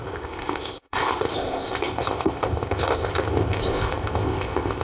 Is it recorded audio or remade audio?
remade